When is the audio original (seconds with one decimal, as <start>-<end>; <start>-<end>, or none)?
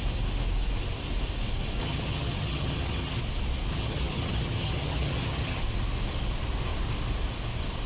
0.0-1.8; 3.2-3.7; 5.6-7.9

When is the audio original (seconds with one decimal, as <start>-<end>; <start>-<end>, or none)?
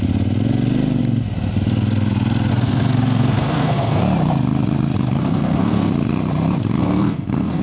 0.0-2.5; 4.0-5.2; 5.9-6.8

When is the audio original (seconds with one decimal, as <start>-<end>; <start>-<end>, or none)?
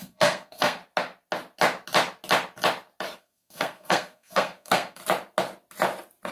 0.8-3.2; 5.0-6.3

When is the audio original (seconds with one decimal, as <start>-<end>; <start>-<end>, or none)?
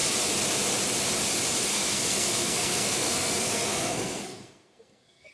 0.0-1.7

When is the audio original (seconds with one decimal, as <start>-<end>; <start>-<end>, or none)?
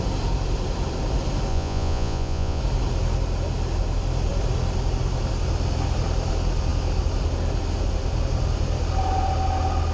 0.0-1.5; 2.6-9.9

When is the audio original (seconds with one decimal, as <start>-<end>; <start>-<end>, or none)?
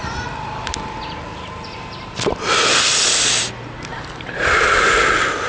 0.0-3.9; 4.9-5.5